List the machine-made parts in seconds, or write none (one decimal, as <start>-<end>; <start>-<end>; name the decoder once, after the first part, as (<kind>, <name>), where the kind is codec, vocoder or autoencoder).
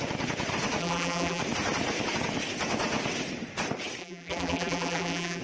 0.8-1.4 (vocoder, BigVGAN v2); 4.0-5.4